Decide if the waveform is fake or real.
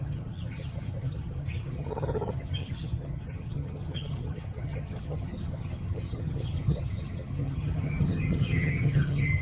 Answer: fake